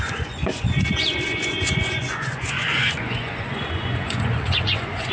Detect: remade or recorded remade